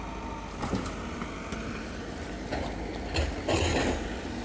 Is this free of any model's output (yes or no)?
yes